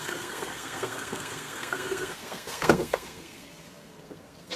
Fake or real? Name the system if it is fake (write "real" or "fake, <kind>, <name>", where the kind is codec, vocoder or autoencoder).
fake, codec, SNAC